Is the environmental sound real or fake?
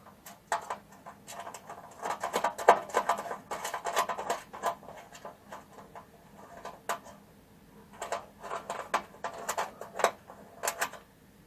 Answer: real